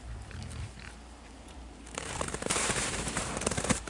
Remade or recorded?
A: remade